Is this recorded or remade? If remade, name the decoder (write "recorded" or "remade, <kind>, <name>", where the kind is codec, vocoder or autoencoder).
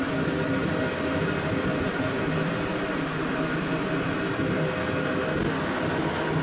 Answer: recorded